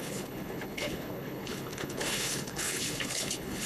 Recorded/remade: remade